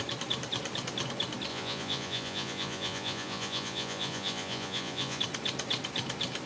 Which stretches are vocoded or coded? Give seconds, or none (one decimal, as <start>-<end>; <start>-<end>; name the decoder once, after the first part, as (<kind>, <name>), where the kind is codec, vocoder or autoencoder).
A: 1.5-5.2 (vocoder, Vocos)